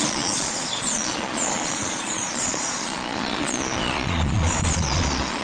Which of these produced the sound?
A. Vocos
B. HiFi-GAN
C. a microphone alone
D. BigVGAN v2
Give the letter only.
A